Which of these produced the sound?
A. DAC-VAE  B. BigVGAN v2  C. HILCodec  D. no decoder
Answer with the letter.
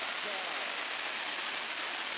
D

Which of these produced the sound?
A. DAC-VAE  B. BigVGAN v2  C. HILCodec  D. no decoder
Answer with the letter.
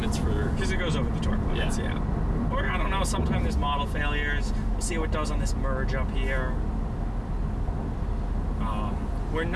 D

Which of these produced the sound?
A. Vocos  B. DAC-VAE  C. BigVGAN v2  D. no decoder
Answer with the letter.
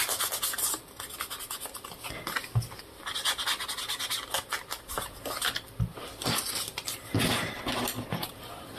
D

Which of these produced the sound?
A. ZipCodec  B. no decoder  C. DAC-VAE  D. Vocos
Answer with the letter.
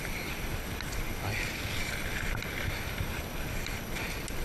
B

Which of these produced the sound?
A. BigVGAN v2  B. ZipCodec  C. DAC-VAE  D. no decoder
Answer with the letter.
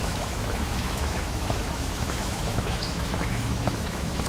C